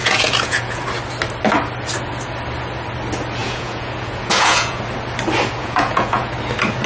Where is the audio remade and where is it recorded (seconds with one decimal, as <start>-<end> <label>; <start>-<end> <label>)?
0.0-0.8 remade; 0.8-3.4 recorded; 3.4-4.8 remade; 4.8-5.6 recorded; 5.6-6.3 remade; 6.3-6.9 recorded